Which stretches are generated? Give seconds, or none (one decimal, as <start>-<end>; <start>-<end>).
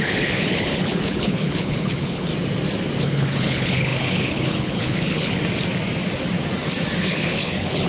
0.0-2.3; 3.0-5.4; 7.0-7.9